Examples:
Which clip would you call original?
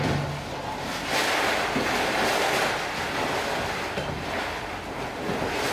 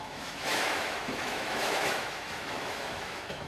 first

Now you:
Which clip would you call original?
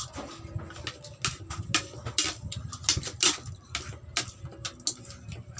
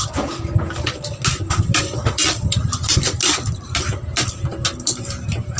first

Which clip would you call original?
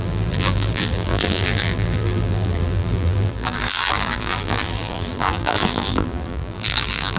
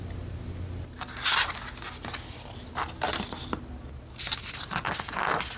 second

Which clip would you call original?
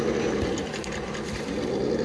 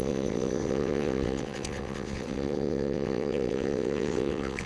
first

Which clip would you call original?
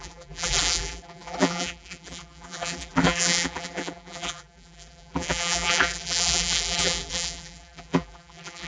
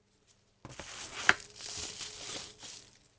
second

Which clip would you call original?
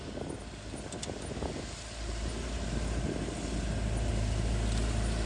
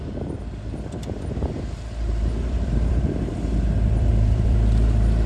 first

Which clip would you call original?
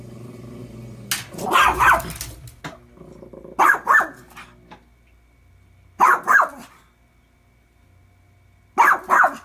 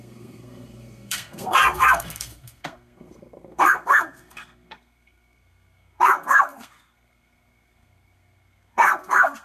first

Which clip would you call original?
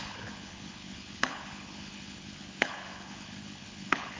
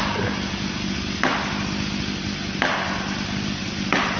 second